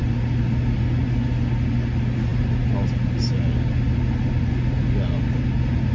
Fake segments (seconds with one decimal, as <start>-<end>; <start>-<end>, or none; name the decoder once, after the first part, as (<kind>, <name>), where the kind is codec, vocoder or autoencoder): none